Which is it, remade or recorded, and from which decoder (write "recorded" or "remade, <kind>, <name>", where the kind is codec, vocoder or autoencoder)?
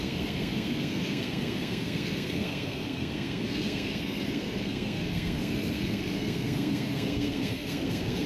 remade, codec, SNAC